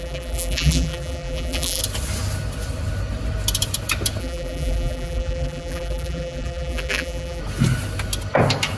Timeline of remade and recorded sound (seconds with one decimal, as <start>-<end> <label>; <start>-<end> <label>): 0.0-1.8 remade; 1.8-4.2 recorded; 4.2-7.4 remade; 7.4-8.8 recorded